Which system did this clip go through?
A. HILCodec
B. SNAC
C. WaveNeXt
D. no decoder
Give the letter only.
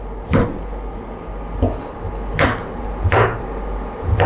D